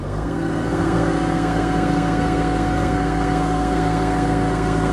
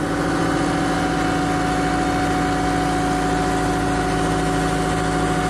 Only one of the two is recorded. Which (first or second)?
second